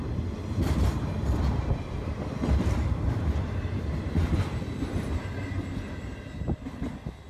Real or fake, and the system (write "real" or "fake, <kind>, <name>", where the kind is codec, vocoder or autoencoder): fake, vocoder, BigVGAN v2